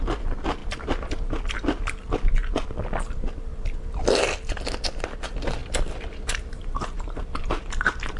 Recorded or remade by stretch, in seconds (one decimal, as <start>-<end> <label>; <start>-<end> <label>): 0.0-0.6 remade; 0.6-1.4 recorded; 1.4-2.4 remade; 2.4-3.2 recorded; 3.2-8.2 remade